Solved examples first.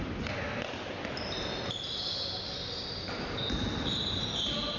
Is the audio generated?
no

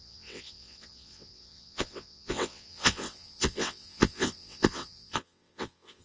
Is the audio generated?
yes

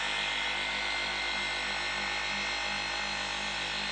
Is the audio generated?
no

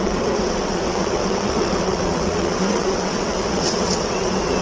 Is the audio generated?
yes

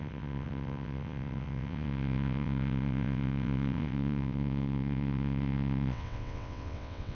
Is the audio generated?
yes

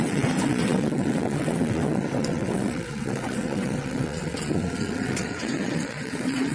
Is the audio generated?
yes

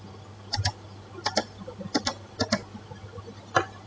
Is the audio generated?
no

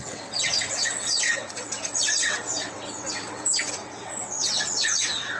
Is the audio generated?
yes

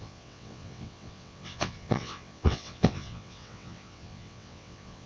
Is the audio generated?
yes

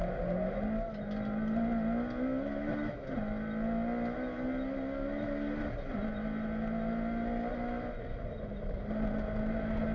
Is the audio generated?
no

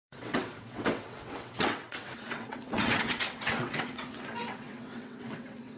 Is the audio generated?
yes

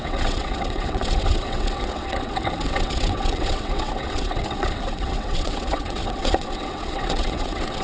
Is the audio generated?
yes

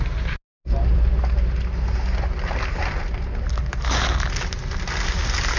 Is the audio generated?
no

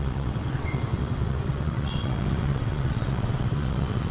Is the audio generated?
yes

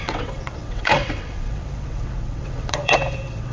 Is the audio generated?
yes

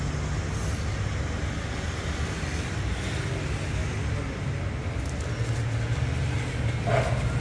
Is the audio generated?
no